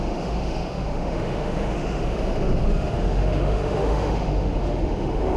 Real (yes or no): no